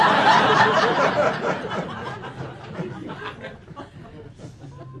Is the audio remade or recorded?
recorded